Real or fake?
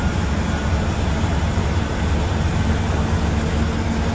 real